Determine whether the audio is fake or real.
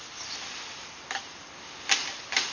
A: real